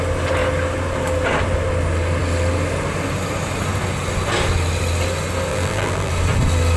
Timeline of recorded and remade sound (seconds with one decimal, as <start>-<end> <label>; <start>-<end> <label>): 0.0-5.5 recorded; 5.5-6.1 remade; 6.1-6.8 recorded